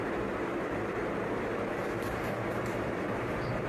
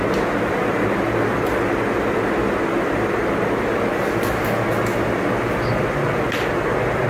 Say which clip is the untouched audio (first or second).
second